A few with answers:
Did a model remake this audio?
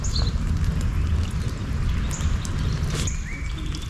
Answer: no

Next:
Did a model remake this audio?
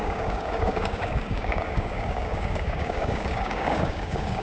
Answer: yes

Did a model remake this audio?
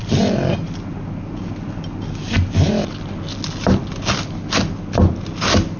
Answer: no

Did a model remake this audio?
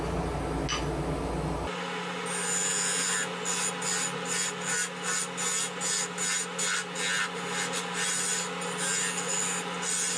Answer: no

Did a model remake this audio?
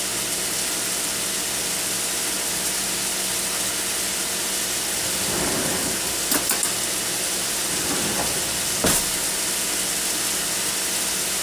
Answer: no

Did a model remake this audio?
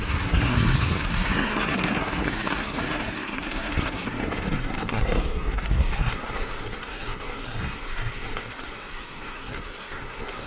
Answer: yes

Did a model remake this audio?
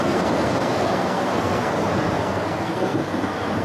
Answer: yes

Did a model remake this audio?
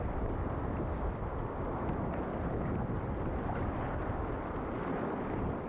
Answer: yes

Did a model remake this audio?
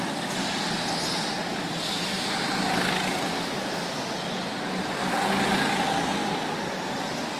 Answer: no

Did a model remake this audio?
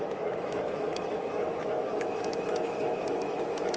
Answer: yes